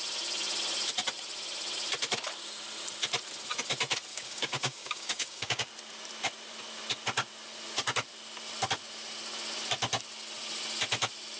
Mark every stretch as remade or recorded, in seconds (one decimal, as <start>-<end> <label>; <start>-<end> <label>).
0.0-4.1 recorded; 4.1-5.7 remade; 5.7-11.4 recorded